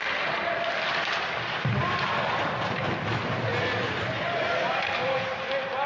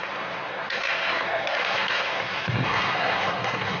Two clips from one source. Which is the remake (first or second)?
second